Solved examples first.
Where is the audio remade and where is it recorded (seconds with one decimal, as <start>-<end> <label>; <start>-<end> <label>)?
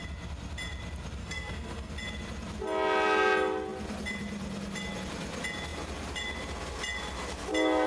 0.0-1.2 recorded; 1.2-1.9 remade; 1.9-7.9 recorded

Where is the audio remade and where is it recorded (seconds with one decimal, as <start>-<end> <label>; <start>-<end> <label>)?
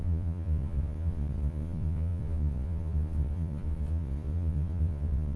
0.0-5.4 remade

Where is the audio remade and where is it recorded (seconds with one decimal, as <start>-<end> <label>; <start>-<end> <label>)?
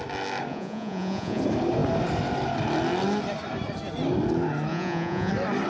0.0-0.5 recorded; 0.5-1.4 remade; 1.4-4.7 recorded; 4.7-5.3 remade; 5.3-5.7 recorded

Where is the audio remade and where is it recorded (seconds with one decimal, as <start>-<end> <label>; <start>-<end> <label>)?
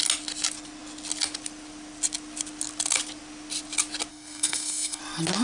0.0-4.1 recorded; 4.1-5.0 remade; 5.0-5.4 recorded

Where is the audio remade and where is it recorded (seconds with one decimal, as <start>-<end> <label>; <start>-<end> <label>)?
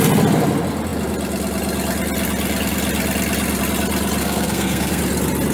0.0-4.2 recorded; 4.2-5.0 remade; 5.0-5.5 recorded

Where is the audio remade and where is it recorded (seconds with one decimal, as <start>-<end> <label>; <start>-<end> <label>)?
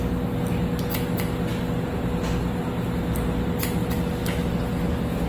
0.0-5.3 recorded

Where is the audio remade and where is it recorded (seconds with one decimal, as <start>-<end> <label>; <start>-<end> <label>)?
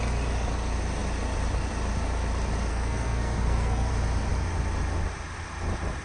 0.0-2.7 recorded; 2.7-3.9 remade; 3.9-6.0 recorded